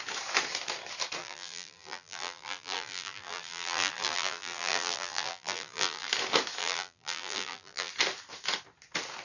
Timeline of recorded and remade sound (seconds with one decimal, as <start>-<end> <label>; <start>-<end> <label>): 0.0-1.2 recorded; 1.2-6.1 remade; 6.1-6.6 recorded; 6.6-7.9 remade; 7.9-9.2 recorded

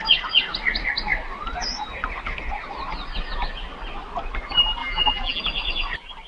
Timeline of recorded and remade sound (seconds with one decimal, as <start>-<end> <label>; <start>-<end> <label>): 0.0-4.8 recorded; 4.8-5.4 remade; 5.4-6.3 recorded